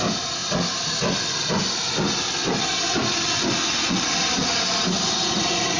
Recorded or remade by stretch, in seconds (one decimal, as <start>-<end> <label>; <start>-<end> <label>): 0.0-5.8 recorded

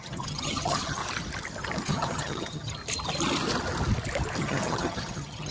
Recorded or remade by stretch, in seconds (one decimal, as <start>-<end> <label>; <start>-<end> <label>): 0.0-1.0 remade; 1.0-1.9 recorded; 1.9-2.8 remade; 2.8-4.4 recorded; 4.4-5.5 remade

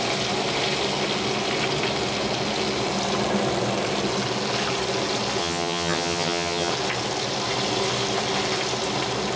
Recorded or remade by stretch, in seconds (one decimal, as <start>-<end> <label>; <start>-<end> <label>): 0.0-5.4 recorded; 5.4-6.7 remade; 6.7-9.4 recorded

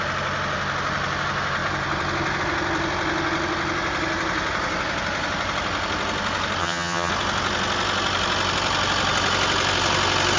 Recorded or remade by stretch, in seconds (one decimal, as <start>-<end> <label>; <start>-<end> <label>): 0.0-6.6 recorded; 6.6-7.1 remade; 7.1-10.4 recorded